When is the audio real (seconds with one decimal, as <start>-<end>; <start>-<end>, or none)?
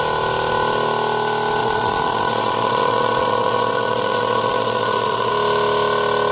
0.0-1.6; 5.3-6.3